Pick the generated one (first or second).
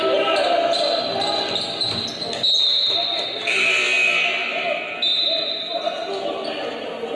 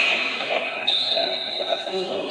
second